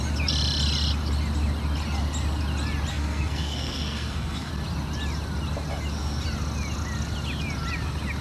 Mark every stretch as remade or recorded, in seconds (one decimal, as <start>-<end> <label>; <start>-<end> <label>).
0.0-2.9 recorded; 2.9-4.5 remade; 4.5-8.2 recorded

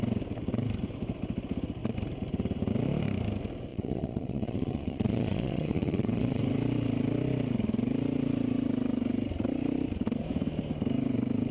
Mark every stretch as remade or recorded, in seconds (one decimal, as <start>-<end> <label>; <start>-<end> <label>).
0.0-3.7 recorded; 3.7-6.4 remade; 6.4-11.5 recorded

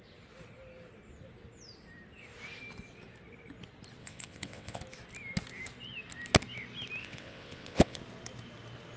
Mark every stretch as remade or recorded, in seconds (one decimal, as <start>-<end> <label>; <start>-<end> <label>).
0.0-4.0 recorded; 4.0-4.8 remade; 4.8-7.0 recorded; 7.0-8.0 remade; 8.0-9.0 recorded